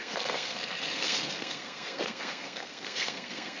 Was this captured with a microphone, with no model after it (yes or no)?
no